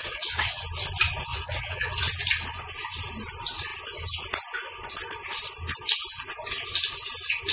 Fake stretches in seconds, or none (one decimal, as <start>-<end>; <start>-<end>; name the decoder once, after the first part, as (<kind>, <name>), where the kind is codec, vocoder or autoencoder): 0.0-0.6 (vocoder, WaveNeXt); 1.3-1.9